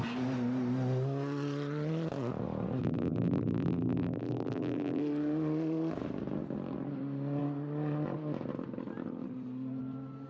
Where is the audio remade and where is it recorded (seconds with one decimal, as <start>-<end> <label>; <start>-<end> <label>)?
0.0-2.8 recorded; 2.8-5.0 remade; 5.0-10.3 recorded

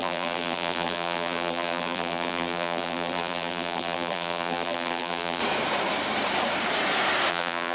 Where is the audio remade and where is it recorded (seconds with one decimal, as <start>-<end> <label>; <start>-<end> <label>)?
0.0-5.4 remade; 5.4-7.3 recorded; 7.3-7.7 remade

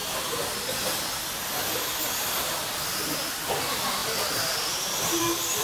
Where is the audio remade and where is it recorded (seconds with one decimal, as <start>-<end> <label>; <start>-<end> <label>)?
0.0-5.6 recorded

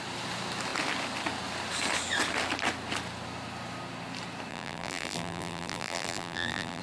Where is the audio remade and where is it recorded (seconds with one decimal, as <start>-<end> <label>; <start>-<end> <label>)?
0.0-4.5 recorded; 4.5-6.8 remade

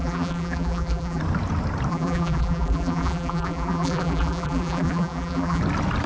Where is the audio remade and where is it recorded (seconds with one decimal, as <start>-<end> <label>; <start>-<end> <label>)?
0.0-1.2 remade; 1.2-1.9 recorded; 1.9-5.6 remade; 5.6-6.1 recorded

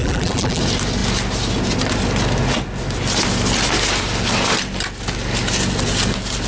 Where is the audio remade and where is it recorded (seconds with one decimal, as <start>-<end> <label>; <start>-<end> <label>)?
0.0-0.6 remade; 0.6-6.5 recorded

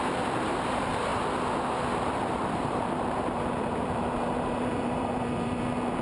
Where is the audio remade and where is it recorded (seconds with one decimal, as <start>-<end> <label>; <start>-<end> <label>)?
0.0-1.1 remade; 1.1-1.9 recorded; 1.9-6.0 remade

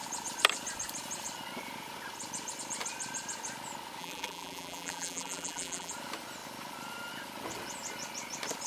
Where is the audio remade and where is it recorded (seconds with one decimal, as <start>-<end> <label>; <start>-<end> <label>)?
0.0-4.0 recorded; 4.0-5.9 remade; 5.9-8.7 recorded